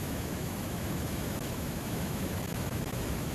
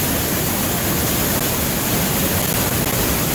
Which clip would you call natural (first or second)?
second